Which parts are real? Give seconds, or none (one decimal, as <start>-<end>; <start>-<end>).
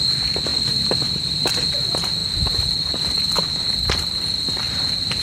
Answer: 0.0-0.5; 1.4-5.2